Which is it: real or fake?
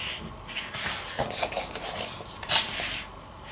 real